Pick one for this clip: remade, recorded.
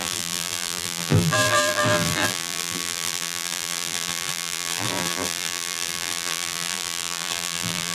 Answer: remade